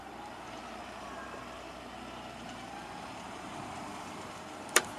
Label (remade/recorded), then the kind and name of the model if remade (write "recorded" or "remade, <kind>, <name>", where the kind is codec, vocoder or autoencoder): remade, vocoder, BigVGAN v2